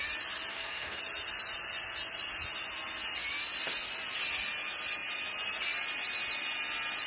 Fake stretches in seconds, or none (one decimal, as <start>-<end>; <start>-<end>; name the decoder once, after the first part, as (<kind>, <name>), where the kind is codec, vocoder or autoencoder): 0.5-1.0 (codec, SNAC)